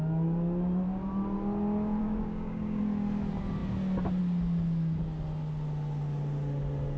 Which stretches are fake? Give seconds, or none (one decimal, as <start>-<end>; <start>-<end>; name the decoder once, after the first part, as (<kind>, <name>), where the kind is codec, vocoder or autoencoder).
2.0-2.8 (codec, DAC)